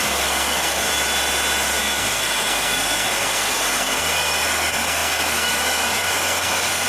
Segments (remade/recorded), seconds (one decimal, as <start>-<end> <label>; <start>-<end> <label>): 0.0-0.9 remade; 0.9-1.8 recorded; 1.8-6.9 remade